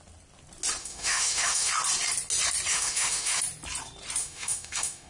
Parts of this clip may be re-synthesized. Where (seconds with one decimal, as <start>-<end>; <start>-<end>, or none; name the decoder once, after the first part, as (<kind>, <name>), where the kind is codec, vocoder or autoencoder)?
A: 0.8-1.7 (autoencoder, DAC-VAE); 2.7-3.4; 4.2-5.1